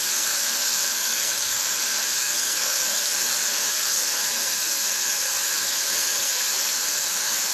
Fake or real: fake